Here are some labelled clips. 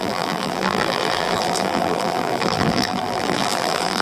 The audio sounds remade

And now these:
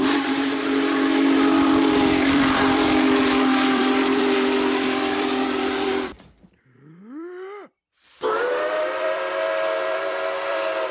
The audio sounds remade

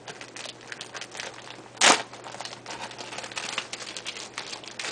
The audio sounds recorded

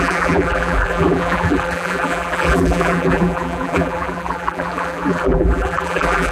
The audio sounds remade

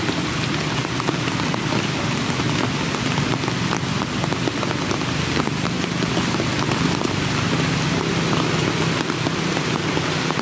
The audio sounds recorded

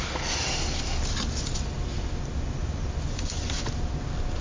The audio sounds recorded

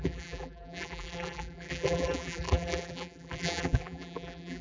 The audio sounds remade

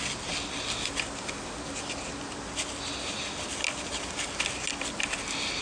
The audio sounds recorded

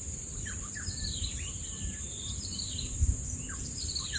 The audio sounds remade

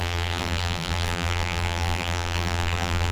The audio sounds remade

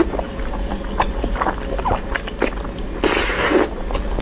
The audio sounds recorded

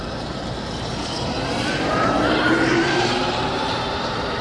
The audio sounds remade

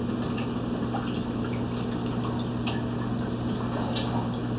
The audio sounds recorded